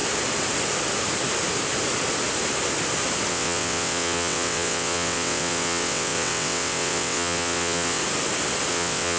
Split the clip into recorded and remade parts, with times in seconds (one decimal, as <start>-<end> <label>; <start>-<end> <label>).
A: 0.0-3.3 recorded; 3.3-8.0 remade; 8.0-8.7 recorded; 8.7-9.2 remade